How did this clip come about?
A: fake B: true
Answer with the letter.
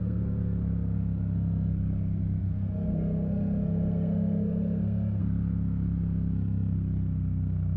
A